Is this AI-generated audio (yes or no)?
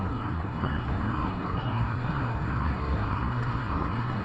yes